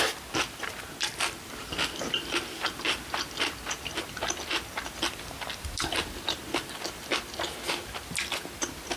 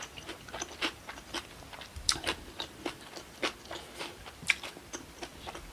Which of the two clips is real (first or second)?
first